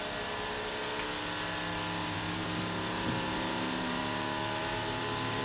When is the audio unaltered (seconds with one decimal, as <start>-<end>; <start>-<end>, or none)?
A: 0.0-2.0; 4.0-4.6